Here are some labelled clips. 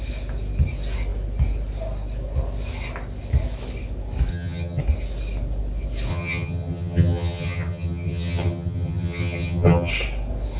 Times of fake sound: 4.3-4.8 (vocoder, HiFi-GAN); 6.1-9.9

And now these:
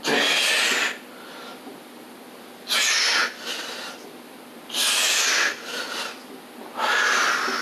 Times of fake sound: 4.8-6.3 (vocoder, BigVGAN v2)